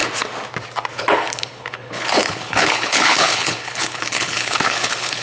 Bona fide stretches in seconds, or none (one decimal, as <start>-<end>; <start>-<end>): 0.0-0.9